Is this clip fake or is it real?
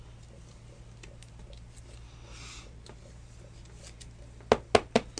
real